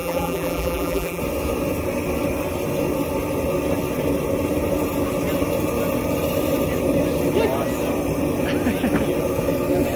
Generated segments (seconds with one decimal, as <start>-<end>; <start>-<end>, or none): 0.0-1.2